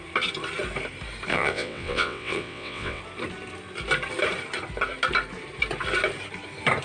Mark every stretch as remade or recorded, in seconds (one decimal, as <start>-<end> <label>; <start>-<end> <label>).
0.0-1.3 recorded; 1.3-3.0 remade; 3.0-6.8 recorded